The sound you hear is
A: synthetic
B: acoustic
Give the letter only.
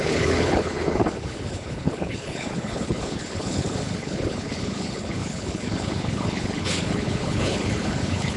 A